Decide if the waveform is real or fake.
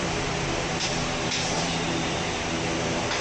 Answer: fake